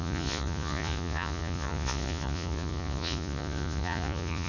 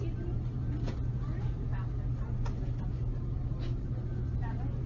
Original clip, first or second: second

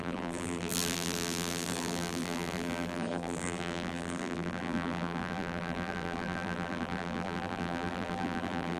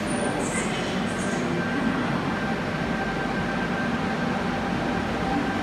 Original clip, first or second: second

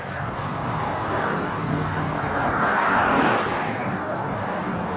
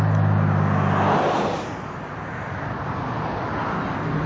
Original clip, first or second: second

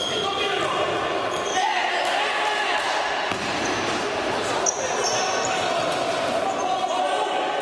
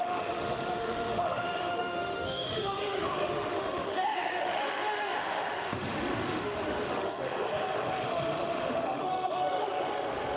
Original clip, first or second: first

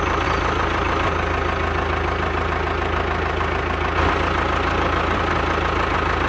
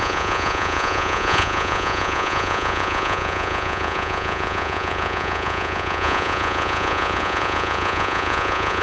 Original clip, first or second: first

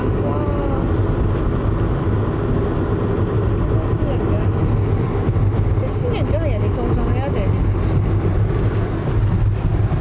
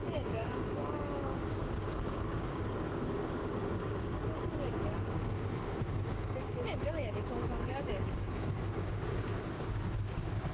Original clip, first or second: first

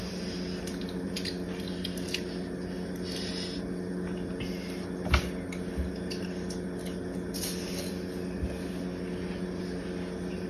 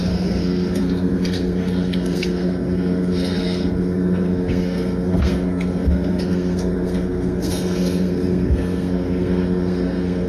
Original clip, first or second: first